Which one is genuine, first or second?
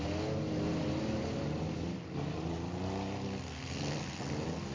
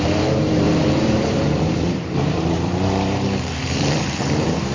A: first